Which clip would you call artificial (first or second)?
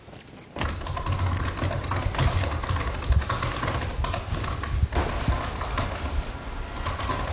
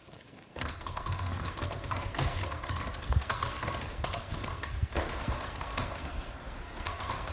second